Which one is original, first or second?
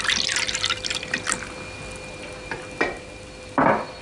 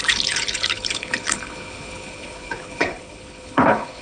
first